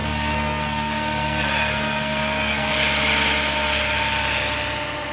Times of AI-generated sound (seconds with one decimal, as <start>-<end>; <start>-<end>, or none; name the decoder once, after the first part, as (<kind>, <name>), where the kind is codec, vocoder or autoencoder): 0.0-2.7 (codec, SNAC)